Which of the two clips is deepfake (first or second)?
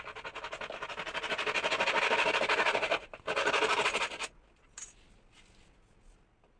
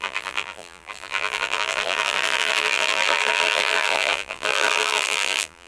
second